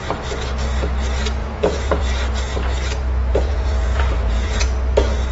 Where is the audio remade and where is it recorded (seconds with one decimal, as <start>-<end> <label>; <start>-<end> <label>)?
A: 0.0-1.4 recorded; 1.4-2.0 remade; 2.0-3.3 recorded; 3.3-4.6 remade; 4.6-5.3 recorded